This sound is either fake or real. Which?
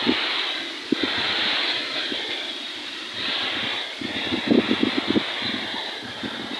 real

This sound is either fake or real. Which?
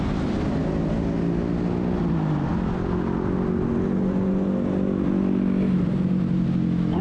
real